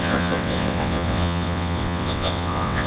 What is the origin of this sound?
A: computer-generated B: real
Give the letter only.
A